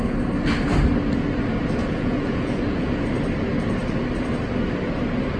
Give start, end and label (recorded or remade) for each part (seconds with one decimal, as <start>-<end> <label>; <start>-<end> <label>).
0.0-1.8 recorded; 1.8-2.9 remade; 2.9-5.4 recorded